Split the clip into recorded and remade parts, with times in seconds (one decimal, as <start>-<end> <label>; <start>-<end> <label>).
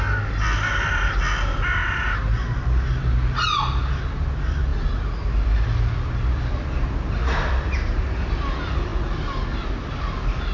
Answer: 0.0-10.5 recorded